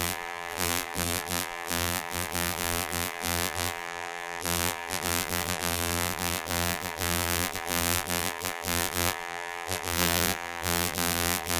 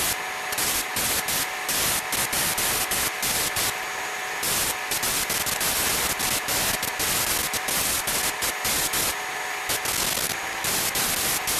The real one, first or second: second